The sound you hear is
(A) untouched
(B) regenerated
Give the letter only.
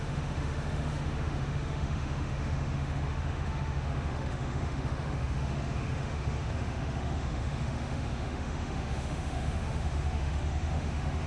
B